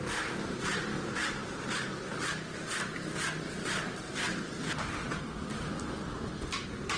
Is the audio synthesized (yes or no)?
no